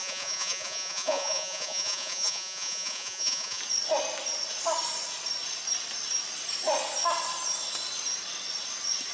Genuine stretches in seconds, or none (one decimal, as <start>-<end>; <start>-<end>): 3.6-9.1